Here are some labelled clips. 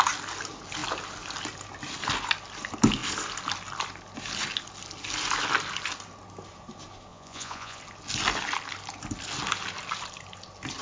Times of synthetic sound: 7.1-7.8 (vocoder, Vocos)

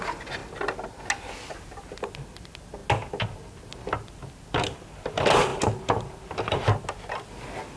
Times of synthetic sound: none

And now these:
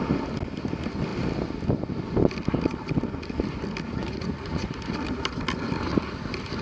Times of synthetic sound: 4.0-4.7 (vocoder, Vocos)

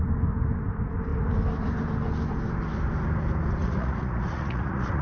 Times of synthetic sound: 3.6-5.0 (vocoder, Vocos)